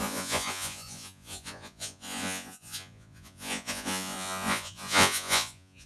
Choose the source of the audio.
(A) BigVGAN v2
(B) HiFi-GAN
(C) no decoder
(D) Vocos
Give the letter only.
D